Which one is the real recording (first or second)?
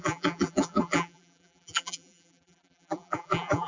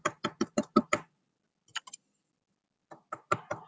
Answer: second